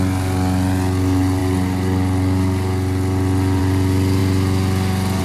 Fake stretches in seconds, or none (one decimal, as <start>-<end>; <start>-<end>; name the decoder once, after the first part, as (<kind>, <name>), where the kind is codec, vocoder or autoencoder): none